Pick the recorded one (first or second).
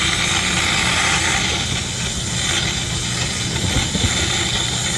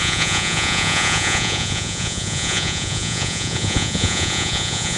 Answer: first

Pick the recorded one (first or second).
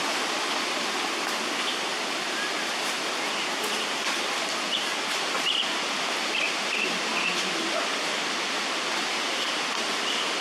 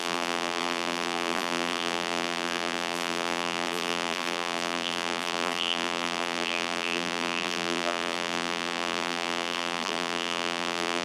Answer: first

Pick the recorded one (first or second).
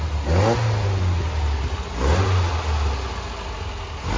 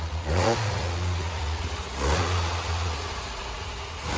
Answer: first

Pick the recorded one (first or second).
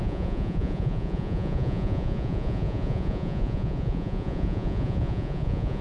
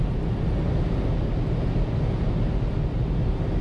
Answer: second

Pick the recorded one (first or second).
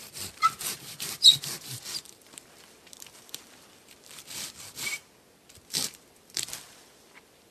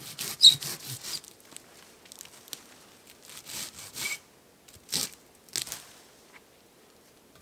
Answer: second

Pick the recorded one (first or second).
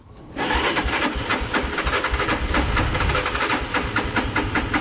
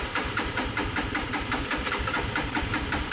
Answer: first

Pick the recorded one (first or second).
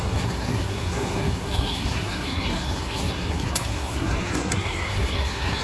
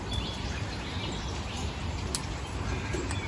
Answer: second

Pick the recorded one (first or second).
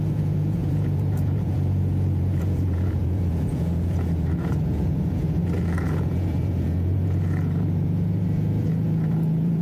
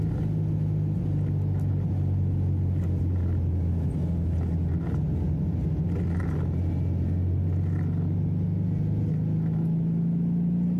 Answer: second